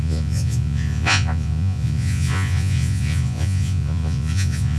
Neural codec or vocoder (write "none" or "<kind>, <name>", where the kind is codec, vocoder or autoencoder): vocoder, Vocos